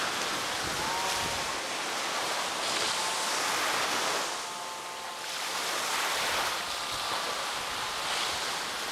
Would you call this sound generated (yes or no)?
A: no